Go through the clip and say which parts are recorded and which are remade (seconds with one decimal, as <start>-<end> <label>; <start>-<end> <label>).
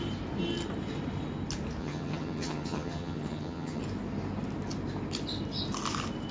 0.0-1.8 recorded; 1.8-3.8 remade; 3.8-6.3 recorded